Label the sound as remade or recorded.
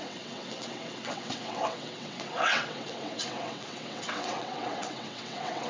remade